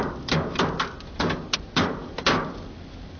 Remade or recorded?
recorded